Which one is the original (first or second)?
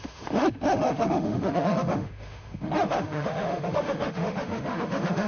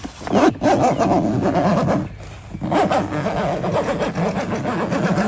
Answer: second